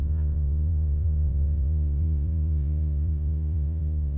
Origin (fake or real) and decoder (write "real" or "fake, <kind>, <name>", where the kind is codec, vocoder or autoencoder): fake, vocoder, Vocos